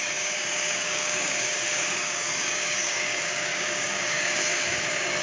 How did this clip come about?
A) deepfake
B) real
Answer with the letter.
A